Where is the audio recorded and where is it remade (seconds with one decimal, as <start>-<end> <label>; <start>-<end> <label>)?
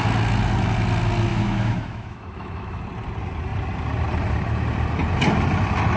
0.0-1.3 recorded; 1.3-2.8 remade; 2.8-6.0 recorded